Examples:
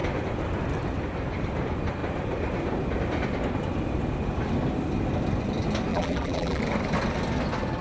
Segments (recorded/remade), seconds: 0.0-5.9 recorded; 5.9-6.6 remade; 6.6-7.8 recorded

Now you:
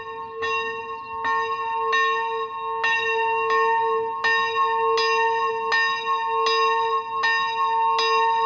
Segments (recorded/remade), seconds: 0.0-8.5 recorded

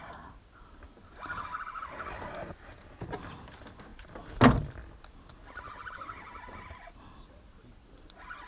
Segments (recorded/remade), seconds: 0.0-8.5 recorded

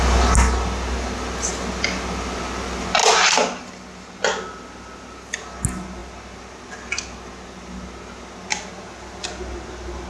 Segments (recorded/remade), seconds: 0.0-10.1 recorded

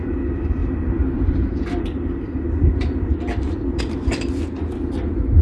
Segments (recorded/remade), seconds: 0.0-0.6 recorded; 0.6-3.8 remade; 3.8-5.4 recorded

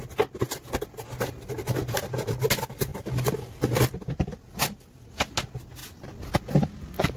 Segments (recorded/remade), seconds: 0.0-2.9 recorded; 2.9-4.9 remade; 4.9-7.2 recorded